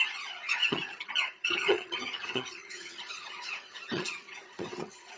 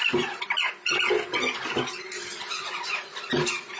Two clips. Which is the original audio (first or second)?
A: second